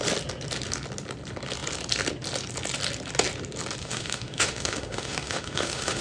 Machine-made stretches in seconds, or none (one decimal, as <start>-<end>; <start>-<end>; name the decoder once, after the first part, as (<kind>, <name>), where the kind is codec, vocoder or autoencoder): 3.8-6.0 (autoencoder, DAC-VAE)